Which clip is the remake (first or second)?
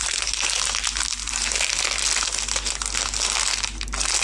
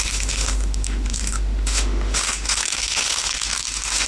second